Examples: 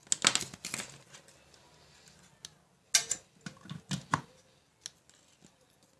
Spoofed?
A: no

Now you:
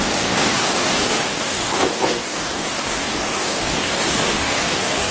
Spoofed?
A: yes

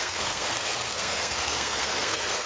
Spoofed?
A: yes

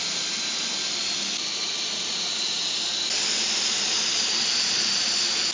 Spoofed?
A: no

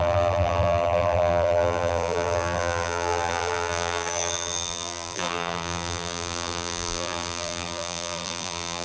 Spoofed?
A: yes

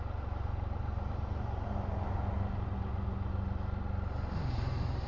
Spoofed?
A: no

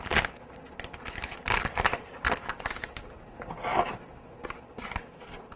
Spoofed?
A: no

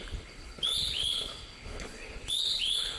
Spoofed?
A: yes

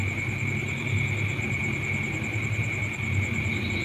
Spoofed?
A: no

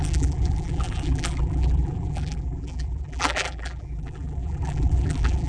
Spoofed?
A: yes